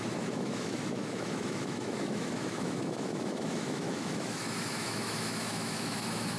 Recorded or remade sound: remade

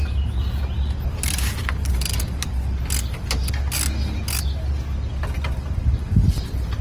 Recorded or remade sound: recorded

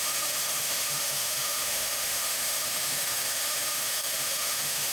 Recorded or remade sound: remade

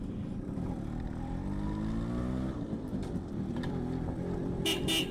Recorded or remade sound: recorded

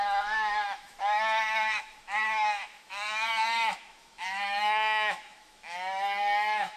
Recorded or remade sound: remade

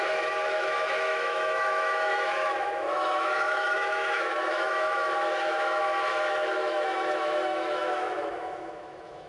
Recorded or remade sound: remade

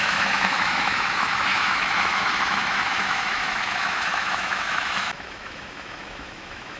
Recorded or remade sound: remade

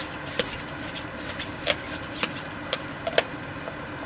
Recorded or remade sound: recorded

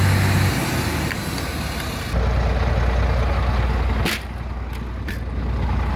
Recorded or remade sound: recorded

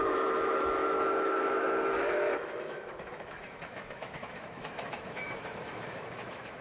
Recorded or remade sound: remade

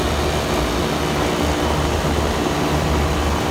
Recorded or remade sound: recorded